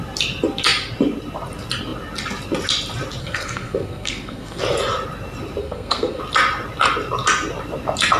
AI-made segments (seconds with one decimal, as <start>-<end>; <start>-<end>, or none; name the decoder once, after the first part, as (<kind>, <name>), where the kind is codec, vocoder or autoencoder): 3.2-4.6 (codec, SNAC); 5.6-6.2